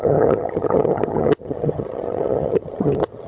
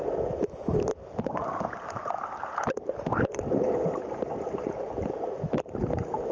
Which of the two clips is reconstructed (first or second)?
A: first